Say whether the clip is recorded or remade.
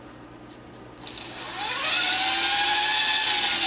recorded